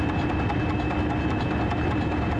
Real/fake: real